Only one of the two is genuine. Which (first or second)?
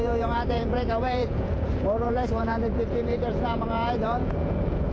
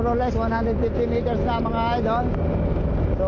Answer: second